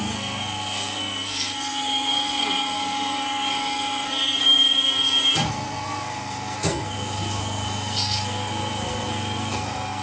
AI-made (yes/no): yes